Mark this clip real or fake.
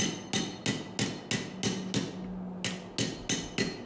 real